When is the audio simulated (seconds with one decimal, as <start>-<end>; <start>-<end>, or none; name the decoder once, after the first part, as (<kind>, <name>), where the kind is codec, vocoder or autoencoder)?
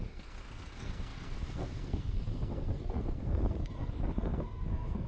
0.0-5.1 (codec, SNAC)